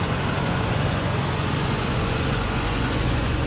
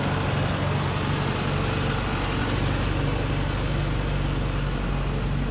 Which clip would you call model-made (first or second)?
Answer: first